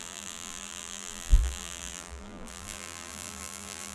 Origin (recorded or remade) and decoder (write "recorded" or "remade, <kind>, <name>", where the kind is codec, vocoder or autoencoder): remade, vocoder, BigVGAN v2